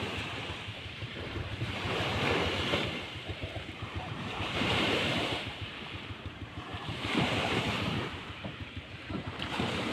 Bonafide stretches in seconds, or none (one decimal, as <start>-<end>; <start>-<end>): none